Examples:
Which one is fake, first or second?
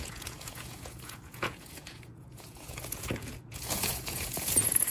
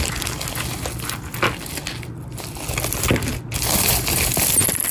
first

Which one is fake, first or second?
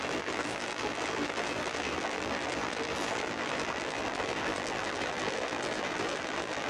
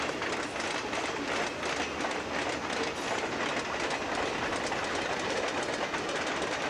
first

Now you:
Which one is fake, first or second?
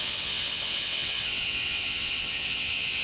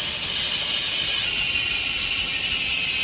first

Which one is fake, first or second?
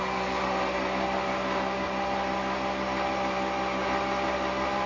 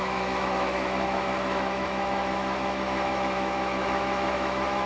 second